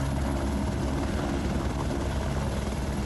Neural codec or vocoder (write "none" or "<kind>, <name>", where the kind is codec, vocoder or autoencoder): none